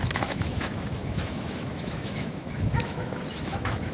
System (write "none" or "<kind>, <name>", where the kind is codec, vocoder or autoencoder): autoencoder, DAC-VAE